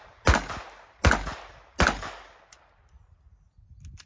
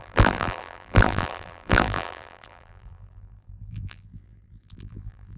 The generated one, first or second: second